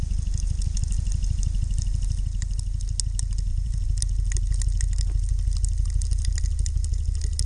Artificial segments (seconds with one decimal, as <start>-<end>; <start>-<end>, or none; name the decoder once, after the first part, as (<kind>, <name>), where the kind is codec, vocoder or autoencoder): 3.5-4.0 (vocoder, BigVGAN v2)